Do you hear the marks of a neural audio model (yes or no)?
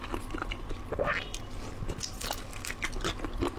no